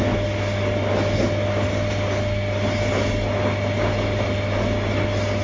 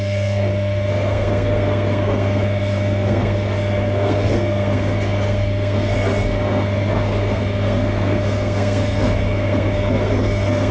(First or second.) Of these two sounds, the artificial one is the second